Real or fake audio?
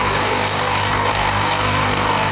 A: fake